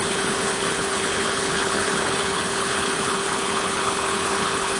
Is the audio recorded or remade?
remade